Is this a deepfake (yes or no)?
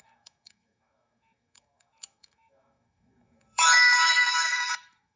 yes